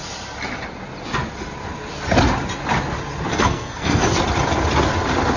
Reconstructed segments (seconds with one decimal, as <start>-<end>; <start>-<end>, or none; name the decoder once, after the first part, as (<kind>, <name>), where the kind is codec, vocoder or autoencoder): 3.3-4.0 (codec, SNAC)